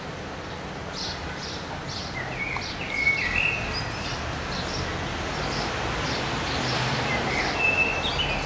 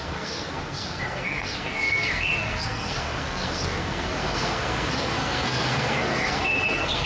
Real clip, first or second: first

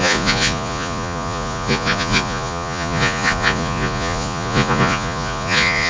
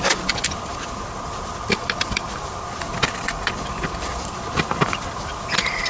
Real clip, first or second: second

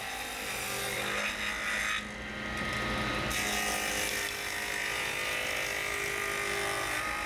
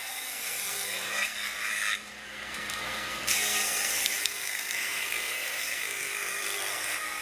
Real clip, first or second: first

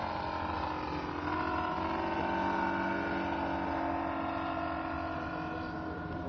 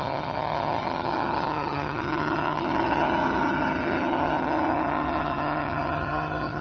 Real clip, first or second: first